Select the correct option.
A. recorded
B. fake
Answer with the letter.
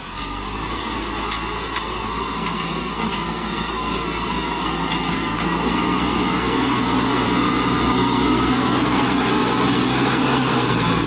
B